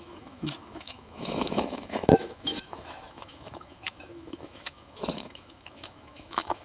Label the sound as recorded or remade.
remade